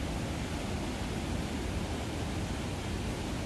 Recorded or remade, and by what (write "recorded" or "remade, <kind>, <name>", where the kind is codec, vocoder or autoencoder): recorded